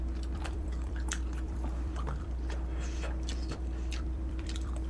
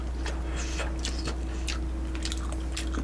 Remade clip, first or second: first